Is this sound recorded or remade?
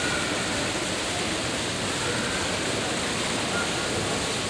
recorded